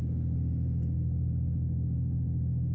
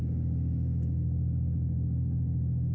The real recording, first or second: first